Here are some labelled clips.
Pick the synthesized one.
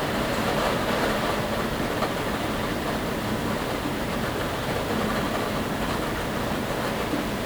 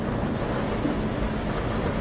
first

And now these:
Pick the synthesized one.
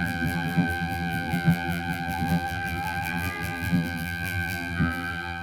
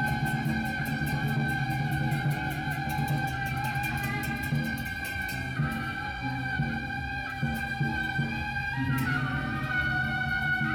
first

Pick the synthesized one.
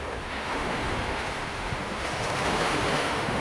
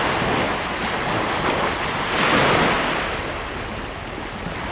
first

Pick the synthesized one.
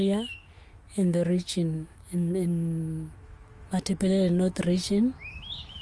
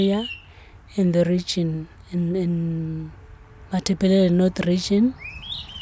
first